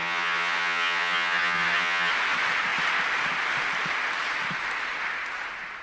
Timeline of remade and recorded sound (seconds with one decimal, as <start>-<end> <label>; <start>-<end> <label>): 0.0-2.1 remade; 2.1-5.8 recorded